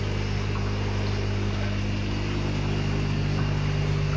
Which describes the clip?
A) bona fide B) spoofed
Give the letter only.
A